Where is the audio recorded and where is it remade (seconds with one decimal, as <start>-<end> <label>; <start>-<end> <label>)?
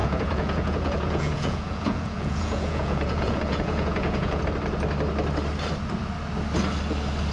0.0-4.4 remade; 4.4-7.3 recorded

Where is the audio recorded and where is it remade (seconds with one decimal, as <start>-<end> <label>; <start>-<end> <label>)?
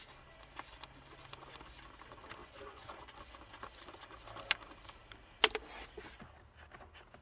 0.0-2.4 recorded; 2.4-3.3 remade; 3.3-7.2 recorded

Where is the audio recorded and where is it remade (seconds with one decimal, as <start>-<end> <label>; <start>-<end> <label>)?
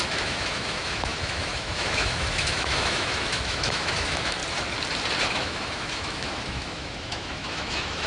0.0-4.4 remade; 4.4-5.3 recorded; 5.3-8.1 remade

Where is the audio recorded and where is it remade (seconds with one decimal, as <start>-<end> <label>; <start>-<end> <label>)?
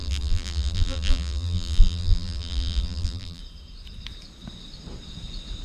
0.0-3.4 remade; 3.4-5.6 recorded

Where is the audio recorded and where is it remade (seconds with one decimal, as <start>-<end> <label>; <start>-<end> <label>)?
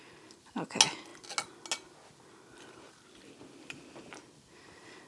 0.0-5.1 recorded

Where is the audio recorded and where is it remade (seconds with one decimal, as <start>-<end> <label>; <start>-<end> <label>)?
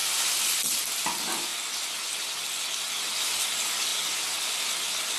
0.0-5.2 recorded